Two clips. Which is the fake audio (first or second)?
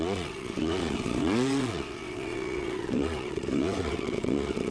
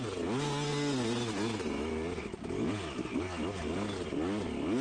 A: first